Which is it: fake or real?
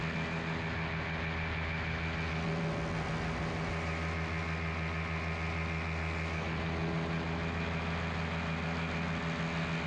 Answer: real